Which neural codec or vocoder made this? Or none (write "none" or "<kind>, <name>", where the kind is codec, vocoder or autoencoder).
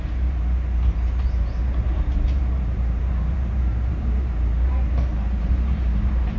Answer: vocoder, BigVGAN v2